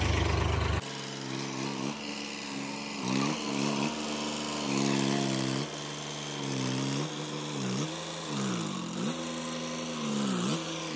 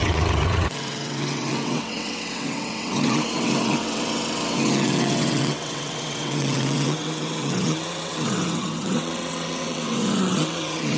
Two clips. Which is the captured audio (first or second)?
first